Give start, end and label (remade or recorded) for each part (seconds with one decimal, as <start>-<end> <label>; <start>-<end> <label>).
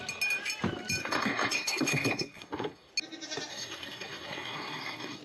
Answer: 0.0-1.0 recorded; 1.0-2.9 remade; 2.9-3.5 recorded; 3.5-5.2 remade